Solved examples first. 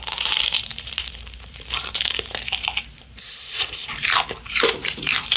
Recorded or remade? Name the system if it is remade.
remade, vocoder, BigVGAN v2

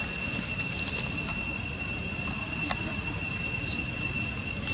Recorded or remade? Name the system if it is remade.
recorded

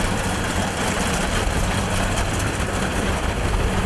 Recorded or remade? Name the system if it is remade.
remade, vocoder, BigVGAN v2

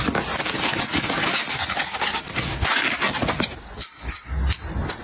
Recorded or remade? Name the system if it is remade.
recorded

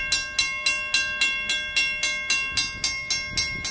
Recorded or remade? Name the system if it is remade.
recorded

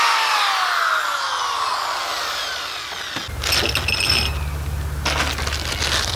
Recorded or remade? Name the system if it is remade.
recorded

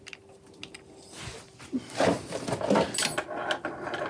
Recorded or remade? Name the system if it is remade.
recorded